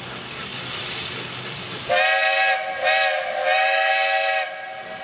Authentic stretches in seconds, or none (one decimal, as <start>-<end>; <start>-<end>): 0.0-3.4; 3.9-5.0